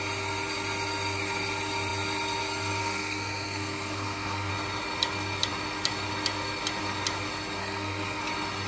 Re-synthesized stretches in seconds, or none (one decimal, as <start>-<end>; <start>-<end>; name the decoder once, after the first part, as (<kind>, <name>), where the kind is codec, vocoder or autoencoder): 2.8-4.5 (codec, SNAC); 7.6-8.2